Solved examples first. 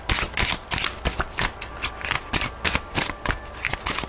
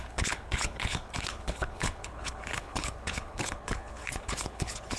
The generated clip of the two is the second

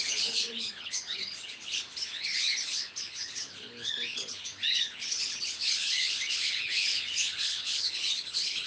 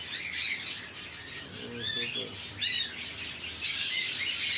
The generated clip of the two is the first